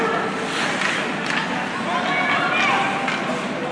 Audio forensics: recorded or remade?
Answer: recorded